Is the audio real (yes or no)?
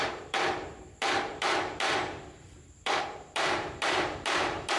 no